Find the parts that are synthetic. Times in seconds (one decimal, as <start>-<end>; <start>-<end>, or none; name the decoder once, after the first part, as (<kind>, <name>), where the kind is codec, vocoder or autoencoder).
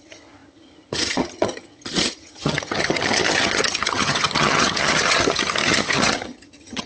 0.0-6.9 (vocoder, HiFi-GAN)